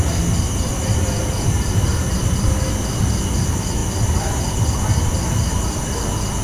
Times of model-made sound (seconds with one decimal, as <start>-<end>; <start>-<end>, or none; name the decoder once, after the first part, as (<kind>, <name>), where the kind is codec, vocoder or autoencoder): none